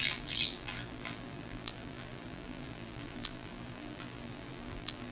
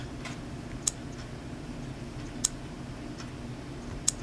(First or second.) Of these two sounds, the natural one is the second